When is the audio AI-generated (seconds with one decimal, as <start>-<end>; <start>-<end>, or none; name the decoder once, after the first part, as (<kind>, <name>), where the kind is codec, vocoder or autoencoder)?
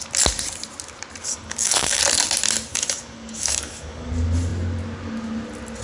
1.2-2.0 (codec, DAC); 2.7-4.1